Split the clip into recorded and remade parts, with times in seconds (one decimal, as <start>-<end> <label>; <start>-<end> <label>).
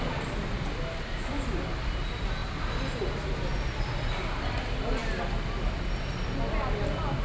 0.0-7.2 recorded